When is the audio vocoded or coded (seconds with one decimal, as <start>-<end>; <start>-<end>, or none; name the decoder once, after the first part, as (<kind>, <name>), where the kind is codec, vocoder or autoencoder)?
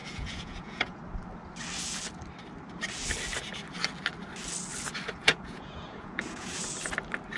0.0-1.0 (vocoder, Vocos); 5.2-6.6